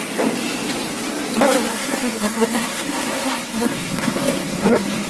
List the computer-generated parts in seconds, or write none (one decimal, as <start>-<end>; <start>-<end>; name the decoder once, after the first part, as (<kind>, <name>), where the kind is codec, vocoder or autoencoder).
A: 1.7-5.1 (codec, SNAC)